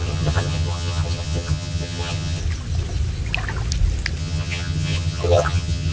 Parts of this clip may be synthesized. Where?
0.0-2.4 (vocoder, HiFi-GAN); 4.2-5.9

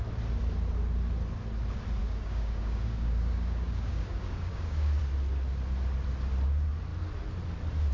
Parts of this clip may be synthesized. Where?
2.0-5.0 (codec, DAC)

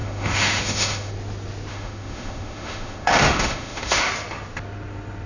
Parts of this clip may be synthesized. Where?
0.0-1.1 (autoencoder, DAC-VAE); 1.7-4.1

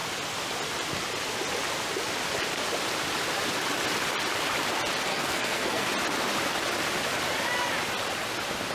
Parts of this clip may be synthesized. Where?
5.1-5.9 (codec, SNAC)

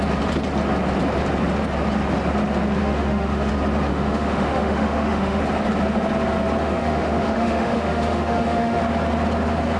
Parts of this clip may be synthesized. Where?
2.8-3.5 (autoencoder, DAC-VAE); 3.9-5.4; 6.6-8.8

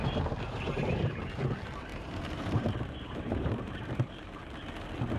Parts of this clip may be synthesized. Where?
0.0-1.2 (vocoder, BigVGAN v2); 1.9-4.4

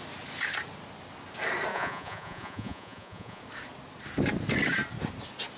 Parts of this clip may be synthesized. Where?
1.7-3.4 (vocoder, Vocos)

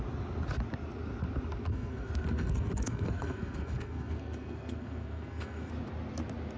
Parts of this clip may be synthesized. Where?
1.7-5.7 (codec, SNAC)